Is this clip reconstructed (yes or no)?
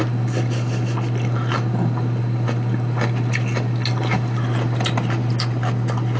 no